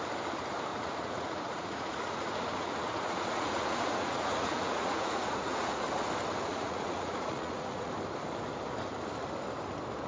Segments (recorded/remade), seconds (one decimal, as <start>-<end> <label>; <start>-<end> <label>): 0.0-0.7 recorded; 0.7-5.8 remade; 5.8-6.5 recorded; 6.5-7.9 remade; 7.9-10.1 recorded